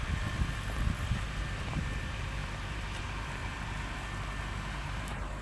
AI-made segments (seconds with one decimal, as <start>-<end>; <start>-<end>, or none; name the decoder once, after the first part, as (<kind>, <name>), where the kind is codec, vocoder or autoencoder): 0.0-3.4 (vocoder, BigVGAN v2); 4.7-5.4